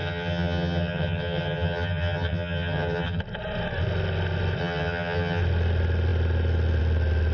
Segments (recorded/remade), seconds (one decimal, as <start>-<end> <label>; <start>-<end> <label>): 0.0-3.2 remade; 3.2-4.6 recorded; 4.6-5.4 remade; 5.4-7.3 recorded

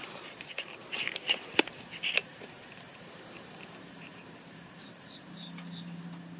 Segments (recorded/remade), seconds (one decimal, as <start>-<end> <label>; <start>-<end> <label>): 0.0-1.1 remade; 1.1-2.3 recorded; 2.3-6.0 remade; 6.0-6.4 recorded

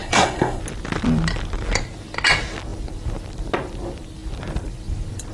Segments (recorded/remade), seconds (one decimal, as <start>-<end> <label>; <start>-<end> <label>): 0.0-0.6 remade; 0.6-5.3 recorded